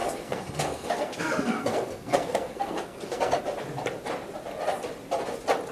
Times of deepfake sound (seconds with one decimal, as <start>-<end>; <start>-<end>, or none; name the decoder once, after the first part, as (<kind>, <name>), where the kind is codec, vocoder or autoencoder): 0.0-3.4 (codec, SNAC)